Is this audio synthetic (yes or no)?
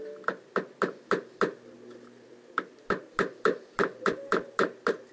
no